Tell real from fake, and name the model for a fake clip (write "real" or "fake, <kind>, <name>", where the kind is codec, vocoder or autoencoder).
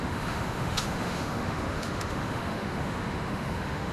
fake, autoencoder, DAC-VAE